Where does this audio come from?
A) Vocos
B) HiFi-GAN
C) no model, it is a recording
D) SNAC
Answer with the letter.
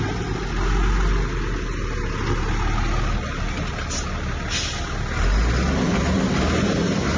C